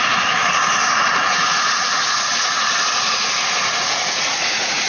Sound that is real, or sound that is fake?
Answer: fake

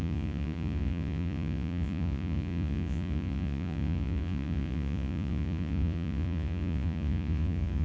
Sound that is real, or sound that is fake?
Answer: fake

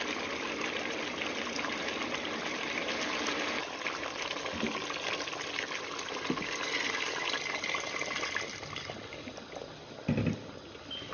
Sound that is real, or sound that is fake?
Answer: real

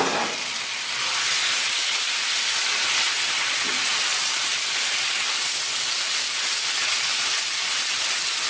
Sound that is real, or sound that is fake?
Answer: real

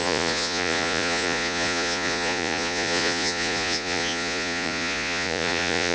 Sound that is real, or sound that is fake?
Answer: fake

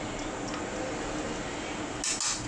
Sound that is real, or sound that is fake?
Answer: real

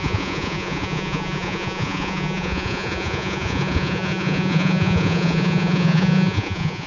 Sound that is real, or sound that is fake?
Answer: fake